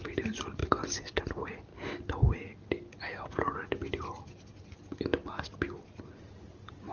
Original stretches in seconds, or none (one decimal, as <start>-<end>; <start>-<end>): 1.7-5.8